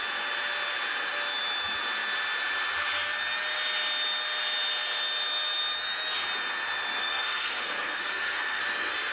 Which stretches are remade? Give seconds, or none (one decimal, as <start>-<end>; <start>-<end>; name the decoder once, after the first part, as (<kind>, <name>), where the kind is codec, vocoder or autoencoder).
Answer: 7.0-8.6 (codec, SNAC)